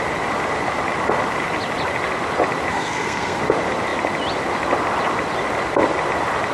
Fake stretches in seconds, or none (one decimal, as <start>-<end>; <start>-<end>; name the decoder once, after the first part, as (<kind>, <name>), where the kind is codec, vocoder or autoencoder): 2.7-3.4 (codec, SNAC)